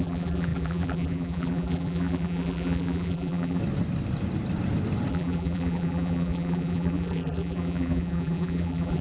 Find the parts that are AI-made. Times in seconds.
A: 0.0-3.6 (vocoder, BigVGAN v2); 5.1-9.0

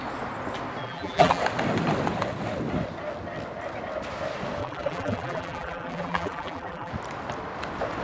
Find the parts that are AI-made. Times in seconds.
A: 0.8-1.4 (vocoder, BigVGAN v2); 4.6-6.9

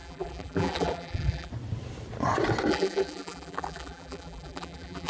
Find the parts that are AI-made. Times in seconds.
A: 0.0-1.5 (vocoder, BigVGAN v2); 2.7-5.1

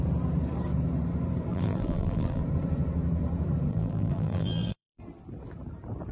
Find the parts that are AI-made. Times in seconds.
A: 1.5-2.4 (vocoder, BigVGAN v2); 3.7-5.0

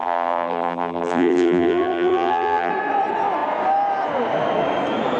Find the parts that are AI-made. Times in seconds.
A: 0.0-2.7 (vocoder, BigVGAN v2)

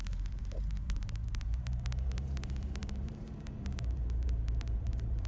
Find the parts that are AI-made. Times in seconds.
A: 0.0-5.3 (vocoder, BigVGAN v2)

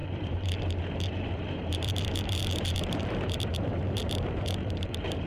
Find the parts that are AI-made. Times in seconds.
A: 0.0-5.3 (vocoder, BigVGAN v2)